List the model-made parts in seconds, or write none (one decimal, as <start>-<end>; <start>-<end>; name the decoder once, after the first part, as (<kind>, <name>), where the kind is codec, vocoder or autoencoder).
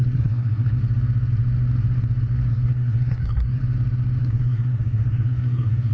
0.0-0.8 (codec, SNAC); 2.5-3.6; 4.2-5.9